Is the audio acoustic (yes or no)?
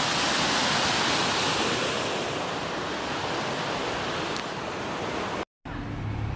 yes